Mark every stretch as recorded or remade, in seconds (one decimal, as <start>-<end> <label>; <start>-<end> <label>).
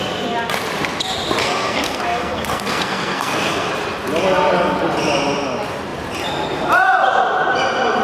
0.0-1.4 recorded; 1.4-3.7 remade; 3.7-8.0 recorded